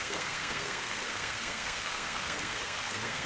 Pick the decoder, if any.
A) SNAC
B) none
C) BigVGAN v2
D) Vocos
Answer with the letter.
A